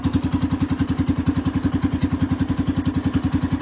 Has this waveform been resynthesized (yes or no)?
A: no